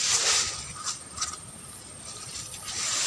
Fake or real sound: real